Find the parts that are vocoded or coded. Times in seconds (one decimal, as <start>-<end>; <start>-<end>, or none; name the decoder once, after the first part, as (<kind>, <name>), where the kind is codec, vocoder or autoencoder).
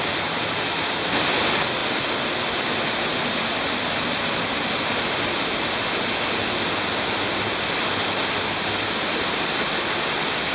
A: none